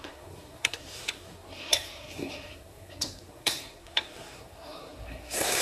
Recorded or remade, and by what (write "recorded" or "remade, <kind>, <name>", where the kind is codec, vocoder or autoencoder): remade, codec, SNAC